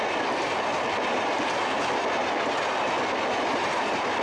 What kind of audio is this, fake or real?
real